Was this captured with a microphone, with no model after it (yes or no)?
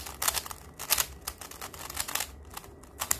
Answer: yes